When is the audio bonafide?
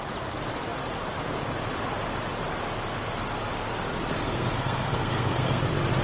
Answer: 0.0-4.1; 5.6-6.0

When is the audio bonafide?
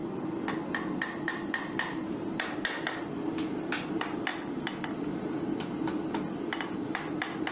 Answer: 0.0-7.5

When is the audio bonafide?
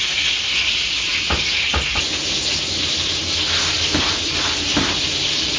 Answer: 0.0-5.6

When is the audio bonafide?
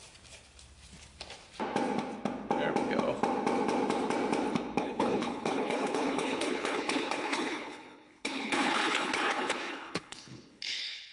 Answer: 0.0-4.8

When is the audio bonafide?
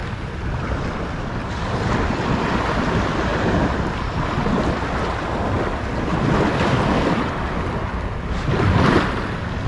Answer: 3.3-8.2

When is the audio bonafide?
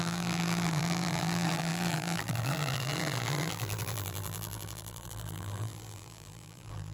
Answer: none